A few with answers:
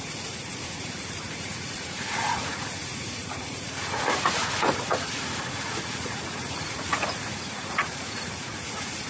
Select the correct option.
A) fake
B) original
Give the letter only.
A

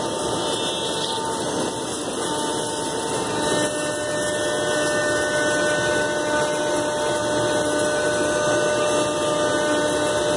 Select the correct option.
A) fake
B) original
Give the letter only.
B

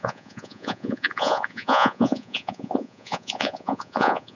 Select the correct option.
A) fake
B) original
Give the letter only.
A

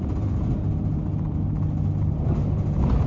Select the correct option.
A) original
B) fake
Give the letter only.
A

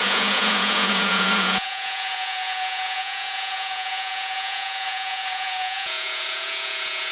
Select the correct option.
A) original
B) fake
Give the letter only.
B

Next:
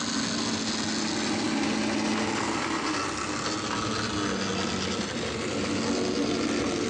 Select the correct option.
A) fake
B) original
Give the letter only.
B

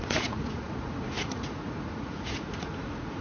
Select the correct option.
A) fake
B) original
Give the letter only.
A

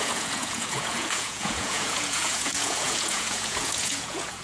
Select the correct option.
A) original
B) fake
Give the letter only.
B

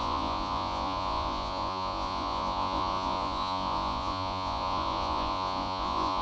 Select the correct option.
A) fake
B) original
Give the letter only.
A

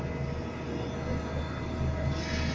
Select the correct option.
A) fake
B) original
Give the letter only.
B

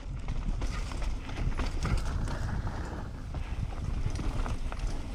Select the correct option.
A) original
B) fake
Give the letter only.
A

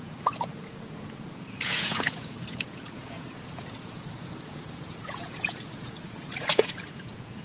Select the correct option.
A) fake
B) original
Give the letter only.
A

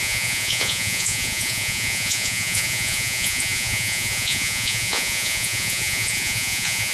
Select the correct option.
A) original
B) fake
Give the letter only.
B